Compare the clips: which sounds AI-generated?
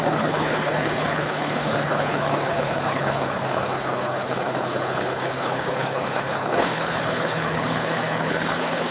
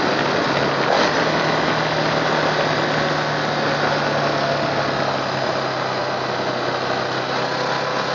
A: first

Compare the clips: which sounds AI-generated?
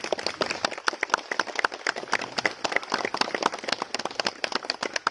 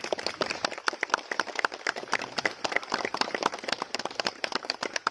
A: second